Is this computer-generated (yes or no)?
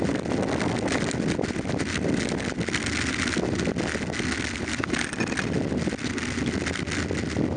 no